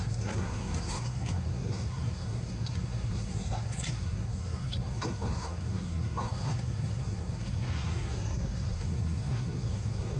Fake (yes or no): yes